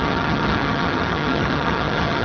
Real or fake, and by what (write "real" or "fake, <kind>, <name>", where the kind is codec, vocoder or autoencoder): fake, vocoder, HiFi-GAN